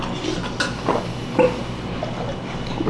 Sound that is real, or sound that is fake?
real